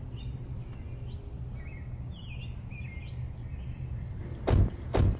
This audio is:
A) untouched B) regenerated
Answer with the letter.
A